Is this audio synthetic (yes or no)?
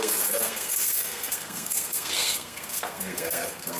yes